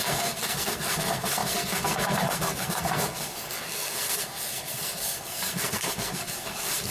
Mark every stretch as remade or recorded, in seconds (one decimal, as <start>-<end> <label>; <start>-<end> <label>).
0.0-6.9 remade